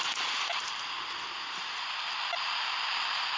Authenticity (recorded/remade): recorded